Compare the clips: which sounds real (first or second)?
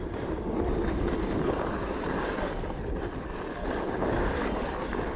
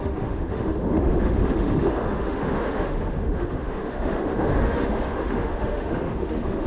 first